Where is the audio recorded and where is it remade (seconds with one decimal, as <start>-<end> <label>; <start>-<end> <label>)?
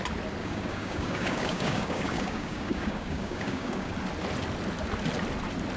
0.0-0.4 recorded; 0.4-3.9 remade; 3.9-5.8 recorded